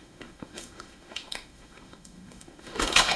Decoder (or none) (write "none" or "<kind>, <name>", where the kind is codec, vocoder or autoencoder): autoencoder, DAC-VAE